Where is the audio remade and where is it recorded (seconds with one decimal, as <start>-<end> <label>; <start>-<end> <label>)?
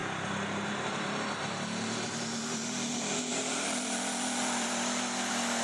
0.0-5.6 remade